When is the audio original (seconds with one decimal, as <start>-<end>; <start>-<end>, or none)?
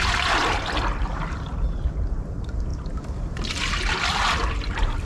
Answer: 0.0-2.7; 3.6-5.1